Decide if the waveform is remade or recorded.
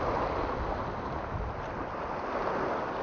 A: recorded